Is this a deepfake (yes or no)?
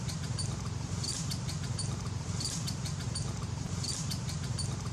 yes